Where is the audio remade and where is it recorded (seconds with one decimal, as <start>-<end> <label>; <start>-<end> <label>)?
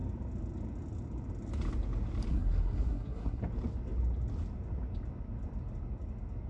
0.0-2.3 recorded; 2.3-3.4 remade; 3.4-6.5 recorded